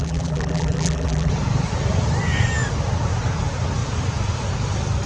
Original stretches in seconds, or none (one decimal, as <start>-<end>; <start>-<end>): 1.3-5.1